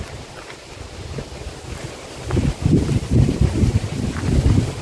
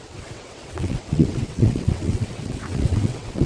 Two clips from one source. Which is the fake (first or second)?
second